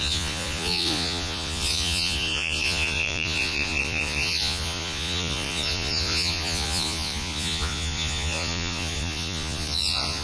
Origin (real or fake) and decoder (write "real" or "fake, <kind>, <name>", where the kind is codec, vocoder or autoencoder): fake, vocoder, Vocos